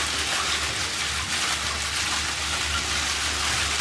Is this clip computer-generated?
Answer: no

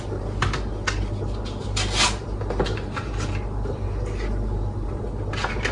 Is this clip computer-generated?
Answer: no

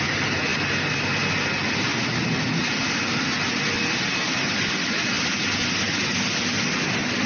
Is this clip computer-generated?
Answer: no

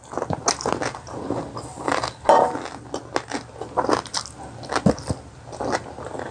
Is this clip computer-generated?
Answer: no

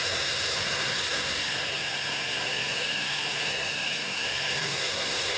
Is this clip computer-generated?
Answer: yes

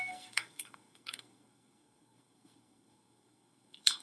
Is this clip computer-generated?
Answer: yes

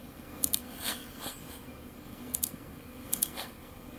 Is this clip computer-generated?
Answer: yes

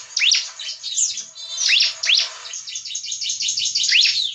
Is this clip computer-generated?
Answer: no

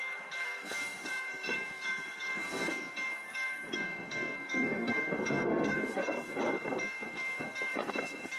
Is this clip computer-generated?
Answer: yes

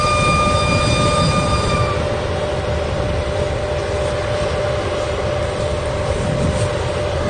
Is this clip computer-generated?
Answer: no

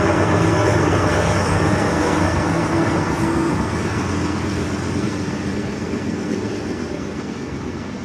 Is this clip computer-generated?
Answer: yes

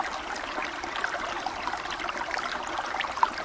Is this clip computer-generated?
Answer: no